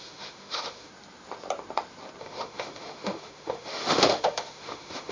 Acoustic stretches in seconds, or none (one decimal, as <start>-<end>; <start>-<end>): 0.9-2.2